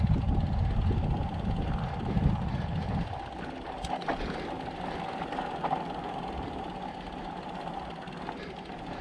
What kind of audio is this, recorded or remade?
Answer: recorded